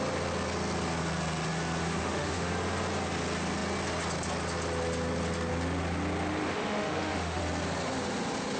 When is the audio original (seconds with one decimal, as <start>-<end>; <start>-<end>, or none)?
0.0-1.8; 2.5-6.4; 7.4-8.6